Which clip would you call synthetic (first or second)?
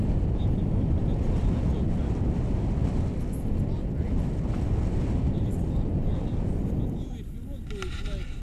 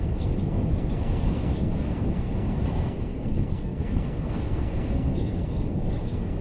second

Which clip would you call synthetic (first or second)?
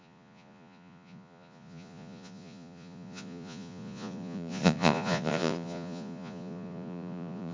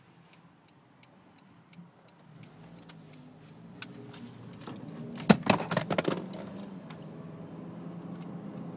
first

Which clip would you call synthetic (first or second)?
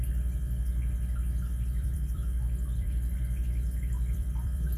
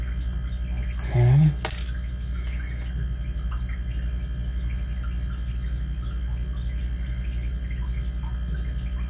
first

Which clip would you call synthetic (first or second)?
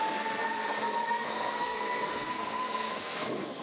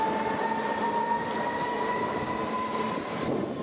first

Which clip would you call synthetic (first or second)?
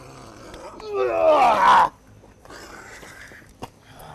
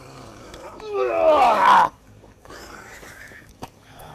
second